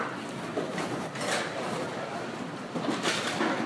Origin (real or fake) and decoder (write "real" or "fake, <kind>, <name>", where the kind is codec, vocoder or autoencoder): real